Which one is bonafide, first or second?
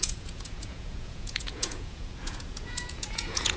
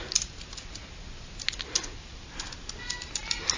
second